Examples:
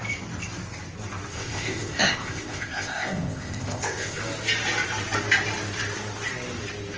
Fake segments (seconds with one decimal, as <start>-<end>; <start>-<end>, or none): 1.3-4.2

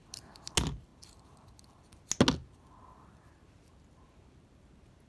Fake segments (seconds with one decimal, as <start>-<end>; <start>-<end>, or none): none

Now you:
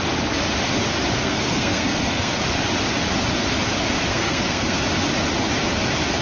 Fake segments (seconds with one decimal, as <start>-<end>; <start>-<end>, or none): 1.2-2.3; 4.1-4.8